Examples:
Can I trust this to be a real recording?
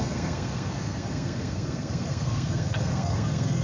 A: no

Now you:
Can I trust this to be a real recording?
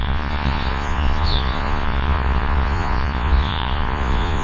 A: no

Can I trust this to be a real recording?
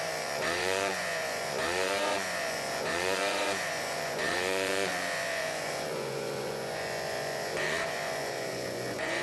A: no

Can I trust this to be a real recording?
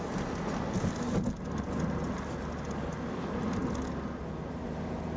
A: yes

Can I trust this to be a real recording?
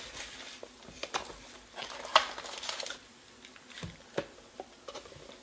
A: yes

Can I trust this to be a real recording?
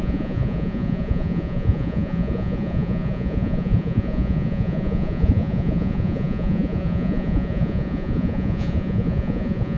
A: no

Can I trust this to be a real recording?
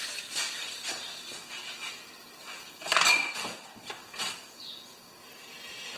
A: yes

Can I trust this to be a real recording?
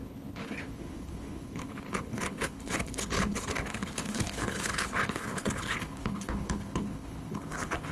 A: no